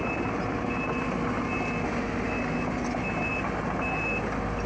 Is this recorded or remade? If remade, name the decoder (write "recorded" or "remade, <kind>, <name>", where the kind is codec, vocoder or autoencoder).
recorded